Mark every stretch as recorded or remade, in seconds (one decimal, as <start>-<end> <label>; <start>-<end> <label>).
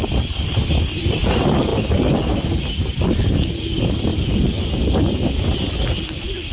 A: 0.0-6.5 recorded